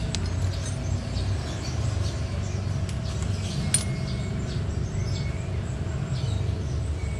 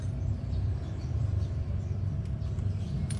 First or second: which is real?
first